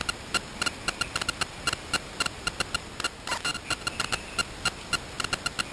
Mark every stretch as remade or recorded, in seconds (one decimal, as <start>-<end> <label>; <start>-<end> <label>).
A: 0.0-5.7 recorded